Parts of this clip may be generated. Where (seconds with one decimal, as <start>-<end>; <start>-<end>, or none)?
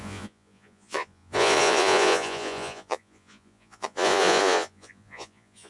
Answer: 0.0-5.7